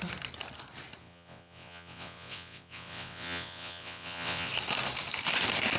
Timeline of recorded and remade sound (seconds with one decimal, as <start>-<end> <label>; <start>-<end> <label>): 0.0-1.0 recorded; 1.0-4.5 remade; 4.5-5.8 recorded